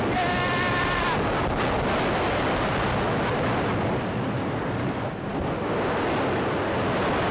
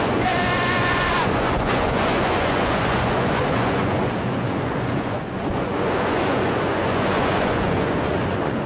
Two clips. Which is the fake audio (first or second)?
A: second